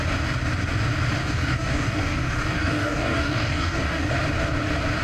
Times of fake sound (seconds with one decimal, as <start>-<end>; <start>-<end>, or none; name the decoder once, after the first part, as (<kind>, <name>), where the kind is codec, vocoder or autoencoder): 1.2-4.1 (codec, DAC)